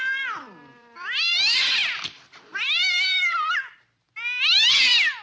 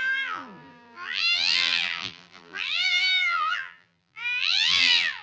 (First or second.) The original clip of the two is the first